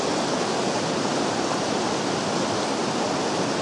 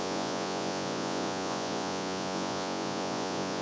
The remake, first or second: second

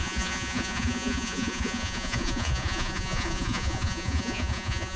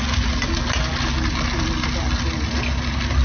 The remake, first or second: first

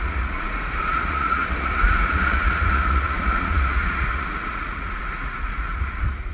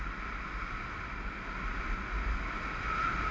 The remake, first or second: first